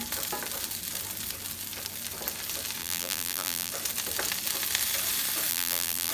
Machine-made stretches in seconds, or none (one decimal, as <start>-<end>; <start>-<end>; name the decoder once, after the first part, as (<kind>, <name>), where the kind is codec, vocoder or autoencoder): 2.8-3.7 (vocoder, BigVGAN v2); 5.5-6.1